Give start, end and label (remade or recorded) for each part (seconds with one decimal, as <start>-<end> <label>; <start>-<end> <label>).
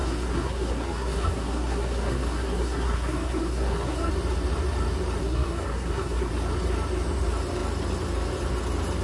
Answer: 0.0-4.1 remade; 4.1-5.2 recorded; 5.2-6.3 remade; 6.3-9.0 recorded